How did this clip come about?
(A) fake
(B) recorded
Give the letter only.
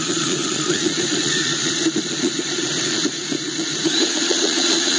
A